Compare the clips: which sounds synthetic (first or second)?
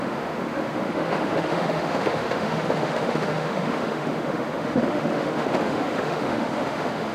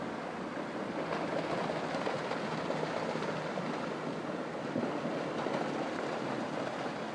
first